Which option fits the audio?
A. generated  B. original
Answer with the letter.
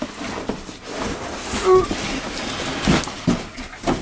B